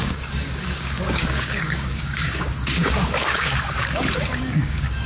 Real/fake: fake